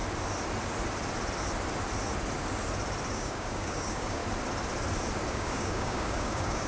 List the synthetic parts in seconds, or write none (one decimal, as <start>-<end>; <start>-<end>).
3.1-4.2; 5.3-6.7